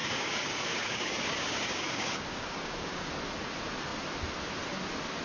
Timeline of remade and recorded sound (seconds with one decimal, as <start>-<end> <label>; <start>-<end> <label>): 0.0-3.1 remade; 3.1-5.2 recorded